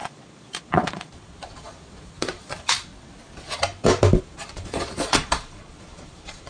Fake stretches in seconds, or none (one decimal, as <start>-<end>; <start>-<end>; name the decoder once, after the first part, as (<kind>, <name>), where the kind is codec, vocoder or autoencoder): 0.0-2.9 (vocoder, Vocos); 4.2-6.5